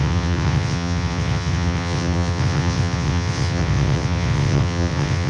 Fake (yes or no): yes